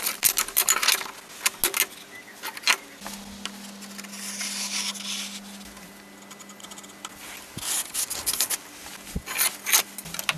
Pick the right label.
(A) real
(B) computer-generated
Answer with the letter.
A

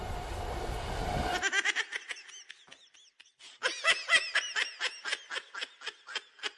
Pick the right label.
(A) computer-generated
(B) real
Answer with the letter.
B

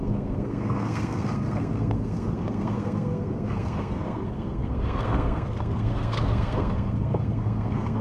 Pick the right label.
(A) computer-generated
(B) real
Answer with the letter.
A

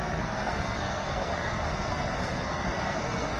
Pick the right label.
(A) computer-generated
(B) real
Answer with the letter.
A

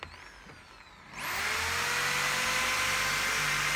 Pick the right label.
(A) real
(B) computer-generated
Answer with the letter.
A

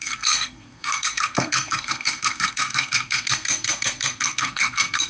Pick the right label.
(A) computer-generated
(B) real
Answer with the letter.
A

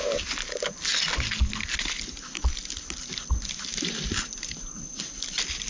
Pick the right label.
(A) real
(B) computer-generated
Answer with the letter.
A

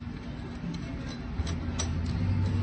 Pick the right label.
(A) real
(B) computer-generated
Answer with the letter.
A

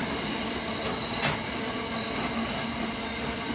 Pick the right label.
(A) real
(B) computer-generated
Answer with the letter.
A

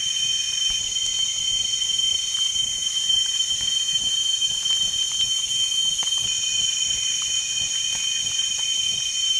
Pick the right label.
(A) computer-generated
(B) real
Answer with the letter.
B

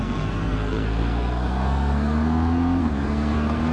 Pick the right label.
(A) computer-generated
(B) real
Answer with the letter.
A